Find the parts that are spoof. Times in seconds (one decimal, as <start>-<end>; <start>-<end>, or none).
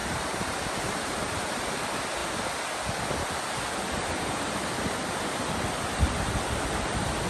0.0-1.5